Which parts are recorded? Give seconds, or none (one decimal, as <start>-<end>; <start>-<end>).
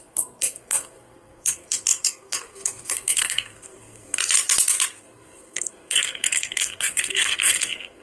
4.2-5.0